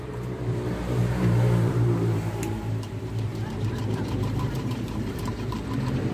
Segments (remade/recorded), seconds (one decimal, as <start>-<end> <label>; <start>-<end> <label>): 0.0-6.1 remade